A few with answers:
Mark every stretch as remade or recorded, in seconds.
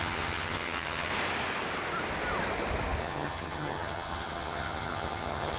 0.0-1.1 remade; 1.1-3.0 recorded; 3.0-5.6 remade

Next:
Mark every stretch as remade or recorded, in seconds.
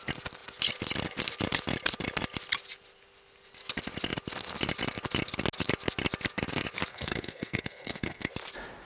0.0-6.9 recorded; 6.9-8.3 remade; 8.3-8.9 recorded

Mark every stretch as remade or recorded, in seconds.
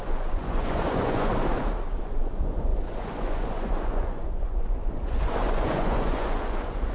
0.0-1.3 remade; 1.3-2.0 recorded; 2.0-6.9 remade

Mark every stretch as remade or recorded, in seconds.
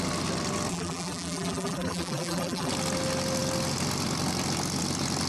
0.0-0.7 recorded; 0.7-2.7 remade; 2.7-5.3 recorded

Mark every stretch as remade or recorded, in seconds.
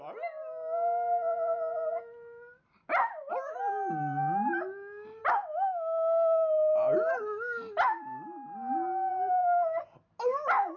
0.0-10.8 recorded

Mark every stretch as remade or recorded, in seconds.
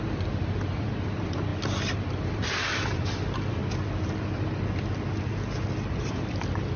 0.0-3.6 remade; 3.6-6.1 recorded; 6.1-6.8 remade